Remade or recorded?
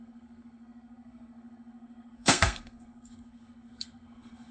remade